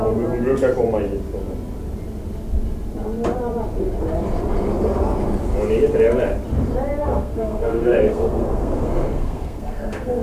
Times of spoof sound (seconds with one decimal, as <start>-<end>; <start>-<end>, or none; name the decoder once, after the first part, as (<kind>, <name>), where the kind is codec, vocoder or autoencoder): 7.0-10.2 (codec, SNAC)